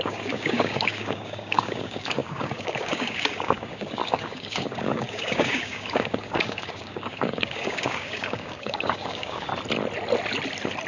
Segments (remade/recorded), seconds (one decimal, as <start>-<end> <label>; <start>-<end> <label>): 0.0-9.5 remade; 9.5-10.9 recorded